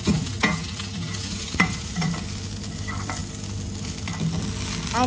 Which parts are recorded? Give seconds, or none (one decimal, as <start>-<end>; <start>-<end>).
0.0-1.4; 2.1-5.1